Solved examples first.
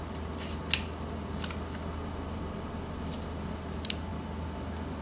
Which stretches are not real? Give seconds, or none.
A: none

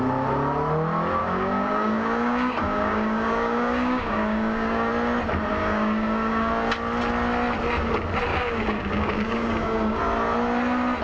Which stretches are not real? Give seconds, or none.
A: 1.2-4.9 (codec, DAC); 5.6-6.5; 8.3-10.0

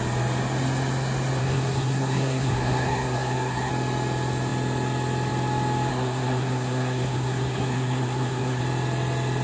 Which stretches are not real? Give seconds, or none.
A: 1.4-3.7 (codec, SNAC); 5.9-8.6